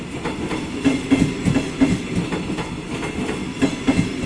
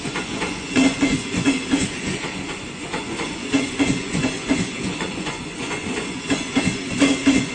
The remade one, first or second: second